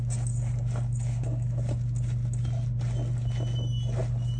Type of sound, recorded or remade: recorded